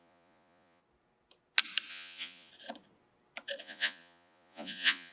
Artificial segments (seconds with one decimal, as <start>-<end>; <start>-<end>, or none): 0.0-0.8; 1.9-2.5; 3.6-5.1